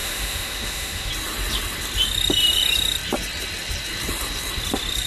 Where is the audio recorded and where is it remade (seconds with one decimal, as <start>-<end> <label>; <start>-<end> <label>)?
0.0-1.1 remade; 1.1-5.1 recorded